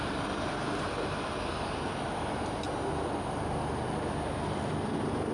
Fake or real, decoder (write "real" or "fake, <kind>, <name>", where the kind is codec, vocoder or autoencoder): real